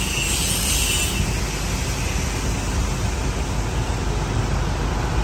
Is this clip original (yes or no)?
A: yes